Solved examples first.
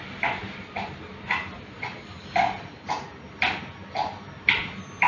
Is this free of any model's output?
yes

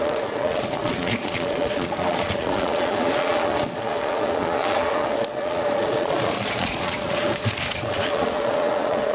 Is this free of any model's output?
no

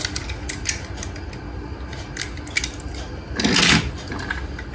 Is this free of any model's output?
yes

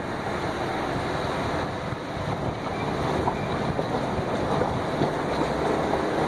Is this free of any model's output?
yes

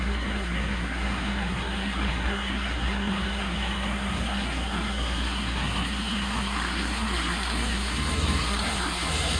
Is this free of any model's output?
no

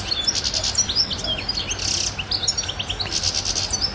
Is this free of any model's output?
yes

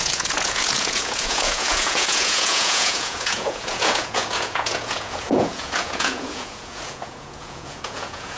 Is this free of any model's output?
no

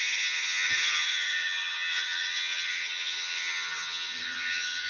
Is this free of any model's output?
no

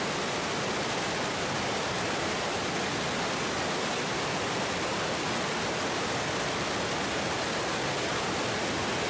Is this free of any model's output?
yes